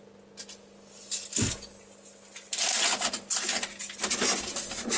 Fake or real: real